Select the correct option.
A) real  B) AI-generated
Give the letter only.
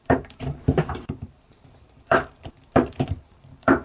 B